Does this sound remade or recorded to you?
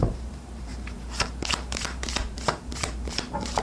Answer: remade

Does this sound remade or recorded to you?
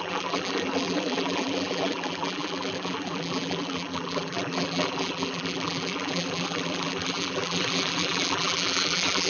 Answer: remade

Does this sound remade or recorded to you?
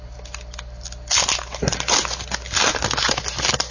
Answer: recorded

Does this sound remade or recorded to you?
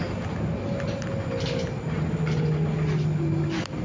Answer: recorded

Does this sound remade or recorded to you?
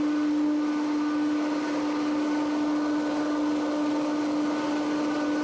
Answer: recorded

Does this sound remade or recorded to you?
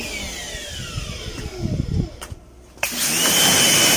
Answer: recorded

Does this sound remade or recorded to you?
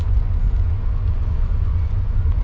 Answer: remade